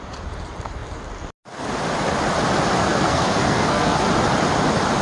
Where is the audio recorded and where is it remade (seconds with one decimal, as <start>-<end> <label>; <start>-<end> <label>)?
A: 0.0-2.8 recorded; 2.8-4.0 remade; 4.0-5.0 recorded